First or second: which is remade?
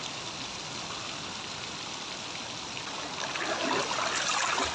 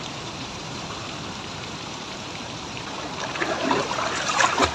second